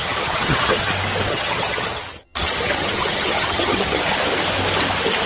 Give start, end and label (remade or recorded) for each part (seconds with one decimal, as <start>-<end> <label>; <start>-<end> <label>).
0.0-0.9 remade; 0.9-1.3 recorded; 1.3-4.0 remade; 4.0-5.3 recorded